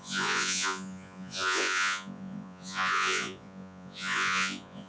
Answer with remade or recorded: remade